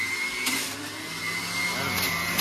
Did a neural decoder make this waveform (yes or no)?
no